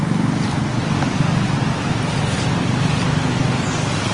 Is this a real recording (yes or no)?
yes